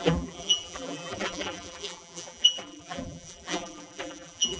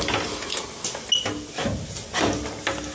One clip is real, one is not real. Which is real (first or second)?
second